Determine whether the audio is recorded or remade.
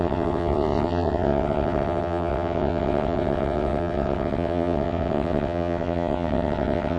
remade